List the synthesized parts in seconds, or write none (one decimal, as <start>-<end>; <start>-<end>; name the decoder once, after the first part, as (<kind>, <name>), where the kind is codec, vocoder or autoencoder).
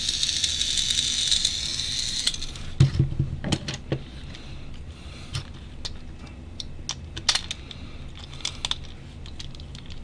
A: none